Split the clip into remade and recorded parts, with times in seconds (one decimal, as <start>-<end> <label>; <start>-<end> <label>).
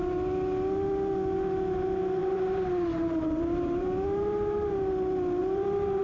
0.0-2.2 recorded; 2.2-4.9 remade; 4.9-5.4 recorded; 5.4-6.0 remade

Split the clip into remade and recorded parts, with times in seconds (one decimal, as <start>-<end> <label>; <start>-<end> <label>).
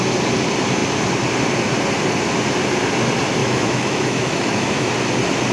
0.0-3.4 recorded; 3.4-4.9 remade; 4.9-5.5 recorded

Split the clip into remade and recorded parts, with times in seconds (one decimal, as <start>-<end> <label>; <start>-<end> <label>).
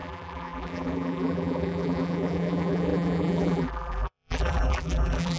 0.0-5.4 remade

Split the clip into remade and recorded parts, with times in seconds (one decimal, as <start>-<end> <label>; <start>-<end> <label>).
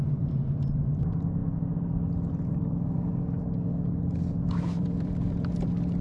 0.0-1.4 remade; 1.4-2.3 recorded; 2.3-3.1 remade; 3.1-4.8 recorded; 4.8-6.0 remade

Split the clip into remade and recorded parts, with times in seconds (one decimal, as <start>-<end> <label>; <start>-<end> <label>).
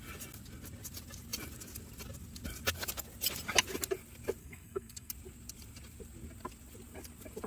0.0-4.4 recorded; 4.4-5.1 remade; 5.1-7.5 recorded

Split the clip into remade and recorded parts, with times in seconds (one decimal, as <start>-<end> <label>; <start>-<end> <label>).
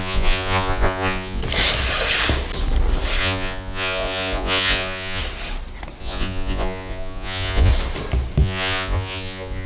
0.0-1.4 remade; 1.4-3.2 recorded; 3.2-5.2 remade; 5.2-6.0 recorded; 6.0-7.7 remade; 7.7-8.4 recorded; 8.4-9.7 remade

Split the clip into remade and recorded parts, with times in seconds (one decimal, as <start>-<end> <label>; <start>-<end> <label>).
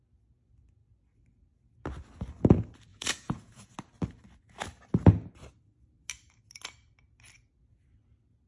0.0-2.9 recorded; 2.9-3.7 remade; 3.7-8.5 recorded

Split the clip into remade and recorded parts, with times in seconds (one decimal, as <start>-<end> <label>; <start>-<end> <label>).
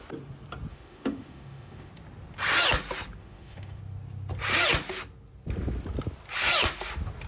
0.0-0.7 recorded; 0.7-1.9 remade; 1.9-3.2 recorded; 3.2-3.8 remade; 3.8-7.3 recorded